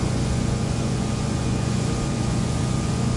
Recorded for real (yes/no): no